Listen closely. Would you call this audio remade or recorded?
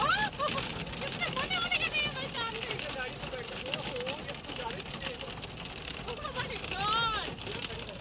recorded